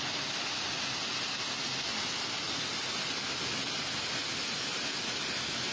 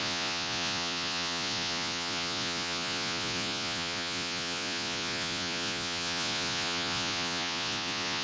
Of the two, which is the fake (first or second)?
second